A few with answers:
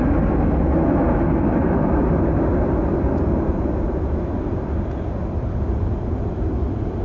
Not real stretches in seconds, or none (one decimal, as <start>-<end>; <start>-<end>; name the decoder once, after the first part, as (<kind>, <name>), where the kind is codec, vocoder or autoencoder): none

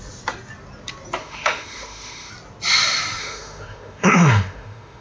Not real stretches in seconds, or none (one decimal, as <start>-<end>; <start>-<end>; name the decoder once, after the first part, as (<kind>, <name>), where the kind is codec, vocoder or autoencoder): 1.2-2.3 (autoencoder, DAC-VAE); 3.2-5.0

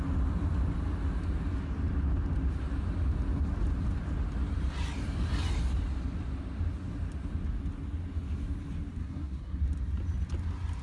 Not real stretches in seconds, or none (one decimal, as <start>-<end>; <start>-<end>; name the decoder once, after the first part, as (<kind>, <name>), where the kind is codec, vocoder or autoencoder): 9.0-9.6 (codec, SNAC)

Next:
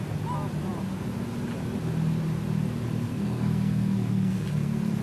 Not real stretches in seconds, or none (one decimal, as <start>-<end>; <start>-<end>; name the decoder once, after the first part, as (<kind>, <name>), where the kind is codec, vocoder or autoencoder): 3.1-5.0 (codec, SNAC)

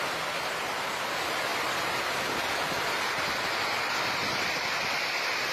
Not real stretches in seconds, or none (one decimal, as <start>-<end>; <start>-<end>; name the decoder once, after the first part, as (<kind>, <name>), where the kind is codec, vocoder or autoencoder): none

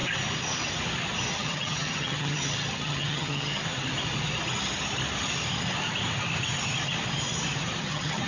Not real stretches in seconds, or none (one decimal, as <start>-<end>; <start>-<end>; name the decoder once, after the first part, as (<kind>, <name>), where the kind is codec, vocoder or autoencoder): 1.3-3.6 (vocoder, HiFi-GAN); 7.8-8.3

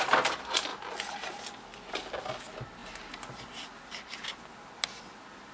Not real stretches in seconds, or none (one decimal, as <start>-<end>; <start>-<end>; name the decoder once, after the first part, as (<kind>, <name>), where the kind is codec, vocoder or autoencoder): none

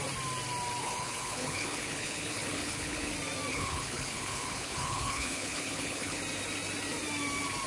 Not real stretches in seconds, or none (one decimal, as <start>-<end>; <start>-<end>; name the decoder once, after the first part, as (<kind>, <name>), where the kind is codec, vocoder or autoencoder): 0.8-3.1 (codec, HILCodec); 3.5-6.2